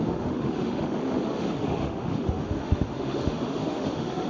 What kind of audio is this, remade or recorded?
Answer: remade